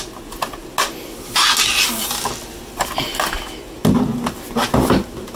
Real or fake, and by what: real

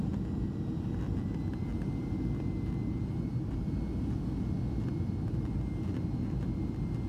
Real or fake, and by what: real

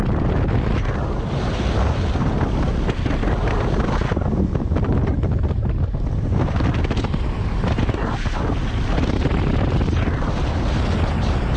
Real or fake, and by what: real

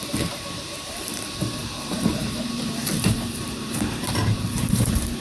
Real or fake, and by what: fake, vocoder, BigVGAN v2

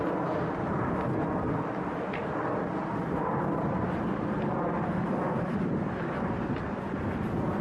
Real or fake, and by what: real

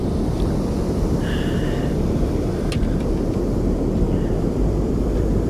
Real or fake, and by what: fake, vocoder, BigVGAN v2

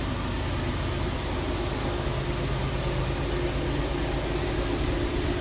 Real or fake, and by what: real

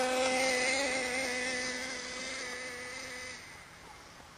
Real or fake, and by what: real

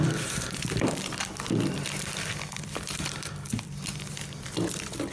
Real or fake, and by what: fake, vocoder, BigVGAN v2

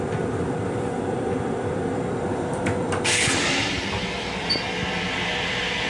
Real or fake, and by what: fake, vocoder, BigVGAN v2